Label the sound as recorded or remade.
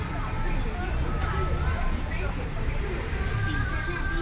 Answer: recorded